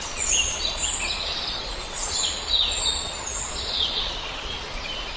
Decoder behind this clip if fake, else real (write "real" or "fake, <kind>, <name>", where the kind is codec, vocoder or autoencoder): fake, vocoder, Vocos